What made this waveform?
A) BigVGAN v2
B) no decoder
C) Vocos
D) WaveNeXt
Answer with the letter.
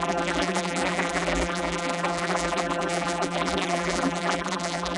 A